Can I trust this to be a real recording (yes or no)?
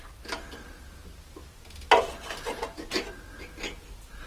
yes